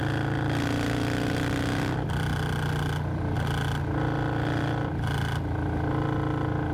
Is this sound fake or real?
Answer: real